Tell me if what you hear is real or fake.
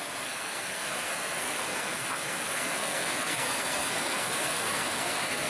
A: fake